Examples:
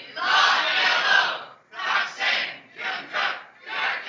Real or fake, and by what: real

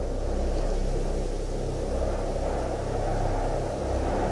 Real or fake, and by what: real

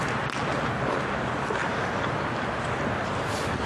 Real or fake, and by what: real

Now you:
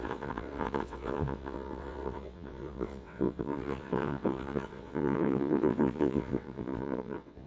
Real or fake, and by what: fake, vocoder, WaveNeXt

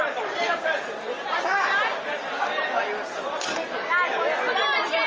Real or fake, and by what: real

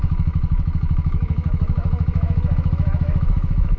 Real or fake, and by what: fake, autoencoder, DAC-VAE